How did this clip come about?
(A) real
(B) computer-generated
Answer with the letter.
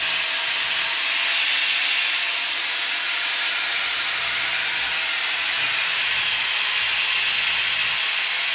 A